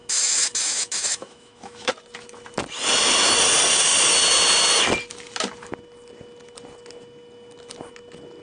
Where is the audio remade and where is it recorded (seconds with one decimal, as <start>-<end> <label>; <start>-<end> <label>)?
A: 0.0-1.9 remade; 1.9-8.4 recorded